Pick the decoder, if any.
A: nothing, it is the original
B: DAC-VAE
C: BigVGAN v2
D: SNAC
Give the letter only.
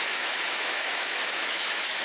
B